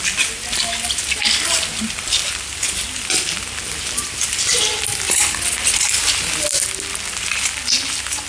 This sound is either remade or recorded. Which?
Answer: recorded